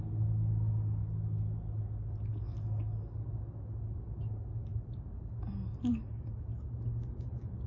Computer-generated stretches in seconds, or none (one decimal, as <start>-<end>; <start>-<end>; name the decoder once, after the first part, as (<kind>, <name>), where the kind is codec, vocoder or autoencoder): none